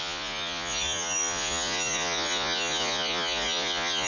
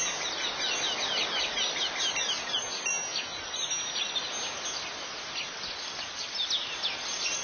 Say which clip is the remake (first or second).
first